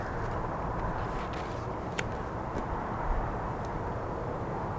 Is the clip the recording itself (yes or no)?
yes